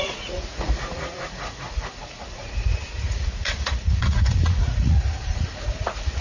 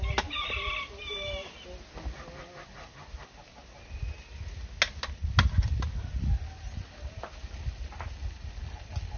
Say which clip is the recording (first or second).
second